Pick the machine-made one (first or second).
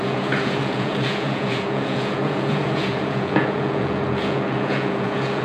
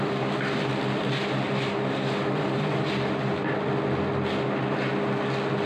first